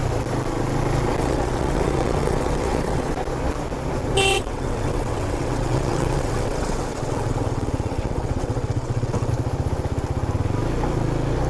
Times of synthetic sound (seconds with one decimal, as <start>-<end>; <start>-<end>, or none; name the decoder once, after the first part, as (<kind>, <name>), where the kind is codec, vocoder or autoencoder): 1.2-3.1 (vocoder, WaveNeXt); 4.3-9.3